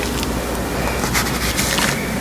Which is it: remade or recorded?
recorded